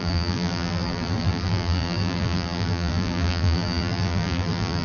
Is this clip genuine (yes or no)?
no